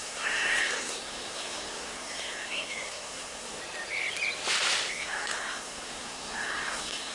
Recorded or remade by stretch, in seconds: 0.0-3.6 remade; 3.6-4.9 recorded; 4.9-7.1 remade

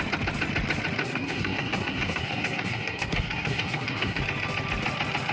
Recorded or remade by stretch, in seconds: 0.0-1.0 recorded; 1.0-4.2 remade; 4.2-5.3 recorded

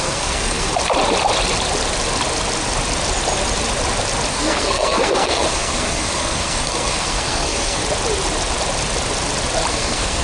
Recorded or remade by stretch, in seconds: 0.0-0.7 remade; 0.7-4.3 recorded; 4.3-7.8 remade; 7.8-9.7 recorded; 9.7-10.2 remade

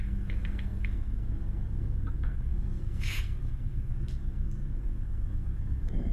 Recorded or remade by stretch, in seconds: 0.0-6.1 remade